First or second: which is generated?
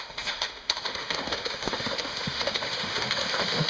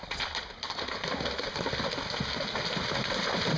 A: first